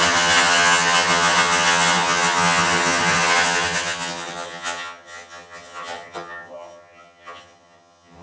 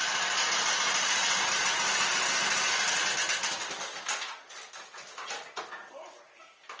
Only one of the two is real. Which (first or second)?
second